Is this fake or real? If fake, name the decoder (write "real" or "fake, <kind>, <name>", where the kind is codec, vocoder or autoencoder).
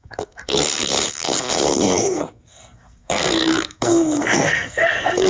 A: fake, codec, SNAC